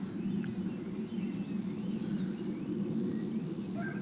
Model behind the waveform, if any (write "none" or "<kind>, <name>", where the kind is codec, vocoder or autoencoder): none